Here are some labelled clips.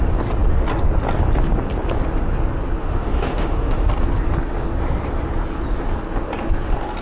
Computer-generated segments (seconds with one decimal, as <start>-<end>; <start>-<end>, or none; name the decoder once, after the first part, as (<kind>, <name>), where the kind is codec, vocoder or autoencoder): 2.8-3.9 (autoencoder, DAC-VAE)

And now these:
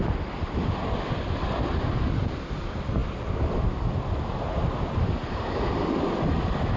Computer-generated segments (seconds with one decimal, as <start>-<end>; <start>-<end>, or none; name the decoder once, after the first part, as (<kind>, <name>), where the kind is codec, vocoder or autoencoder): none

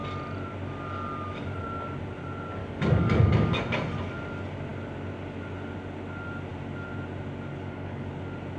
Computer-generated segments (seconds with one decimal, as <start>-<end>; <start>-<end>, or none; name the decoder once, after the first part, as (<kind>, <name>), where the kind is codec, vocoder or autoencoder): 2.6-3.6 (codec, DAC); 7.5-8.1

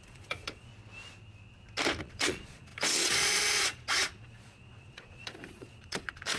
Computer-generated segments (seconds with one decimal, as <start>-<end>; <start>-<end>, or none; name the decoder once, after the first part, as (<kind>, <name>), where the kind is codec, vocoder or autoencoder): 0.0-0.7 (vocoder, Vocos); 2.0-6.4

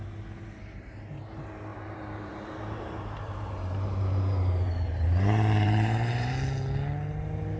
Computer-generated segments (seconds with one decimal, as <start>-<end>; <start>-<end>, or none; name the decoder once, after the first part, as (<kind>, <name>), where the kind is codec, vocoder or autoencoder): 1.7-6.3 (vocoder, BigVGAN v2)

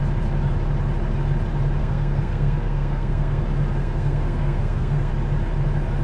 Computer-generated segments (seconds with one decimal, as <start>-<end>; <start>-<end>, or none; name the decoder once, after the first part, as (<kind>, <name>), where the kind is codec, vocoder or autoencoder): 1.8-3.4 (codec, SNAC); 3.8-5.1

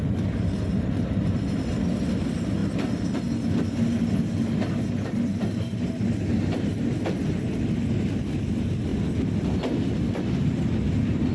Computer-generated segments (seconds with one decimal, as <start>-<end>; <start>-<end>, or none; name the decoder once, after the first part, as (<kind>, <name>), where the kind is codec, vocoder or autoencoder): none